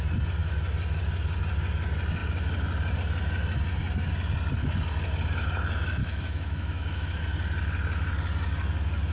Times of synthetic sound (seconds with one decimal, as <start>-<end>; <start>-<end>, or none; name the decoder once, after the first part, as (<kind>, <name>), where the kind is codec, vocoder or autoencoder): 6.0-7.2 (autoencoder, DAC-VAE)